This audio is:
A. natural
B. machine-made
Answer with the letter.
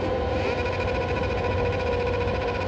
A